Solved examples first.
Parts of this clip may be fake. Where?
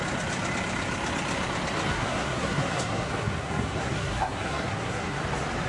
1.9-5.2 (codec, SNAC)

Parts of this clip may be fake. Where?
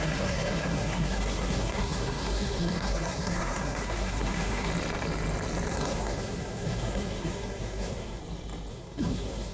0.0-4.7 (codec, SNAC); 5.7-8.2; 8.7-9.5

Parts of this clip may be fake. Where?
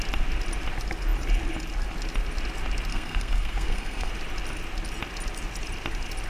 2.9-4.1 (codec, SNAC)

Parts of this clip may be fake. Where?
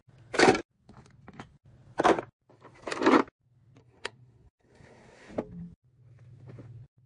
3.8-5.3 (codec, SNAC)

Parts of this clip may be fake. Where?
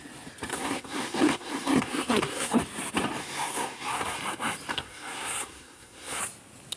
0.5-2.6 (codec, SNAC); 3.2-4.2; 4.7-6.2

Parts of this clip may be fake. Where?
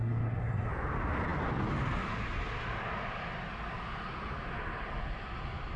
0.0-0.7 (codec, SNAC)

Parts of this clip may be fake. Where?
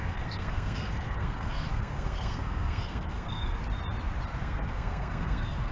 0.0-3.6 (codec, SNAC); 4.4-5.7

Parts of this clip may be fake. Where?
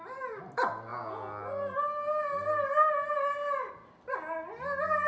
none